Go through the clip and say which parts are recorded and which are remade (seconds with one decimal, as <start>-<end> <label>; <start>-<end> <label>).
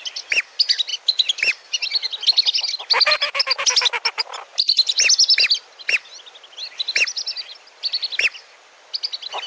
0.0-9.5 recorded